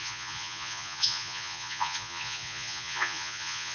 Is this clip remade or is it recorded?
remade